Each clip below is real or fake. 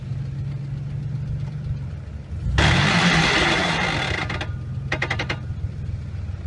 real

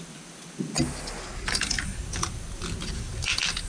real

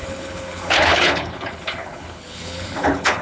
fake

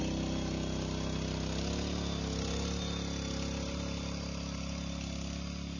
real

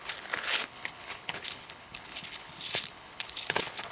fake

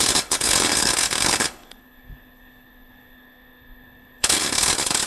fake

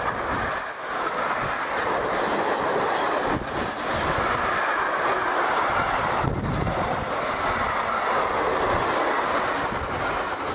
real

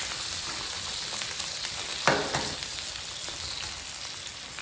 real